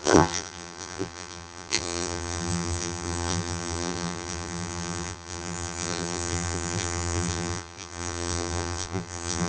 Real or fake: fake